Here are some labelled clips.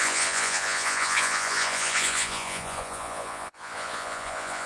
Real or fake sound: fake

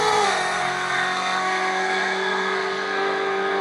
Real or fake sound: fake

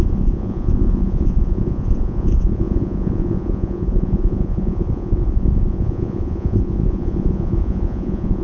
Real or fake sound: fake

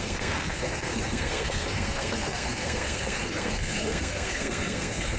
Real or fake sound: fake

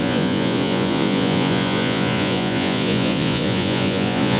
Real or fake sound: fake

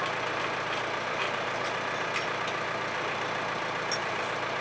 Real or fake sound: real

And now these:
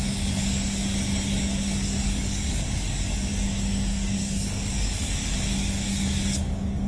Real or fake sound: fake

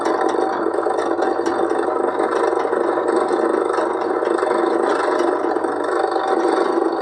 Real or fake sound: real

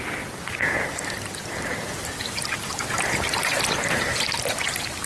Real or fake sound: real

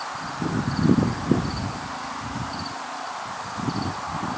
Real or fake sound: real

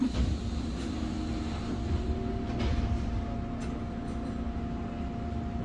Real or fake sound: real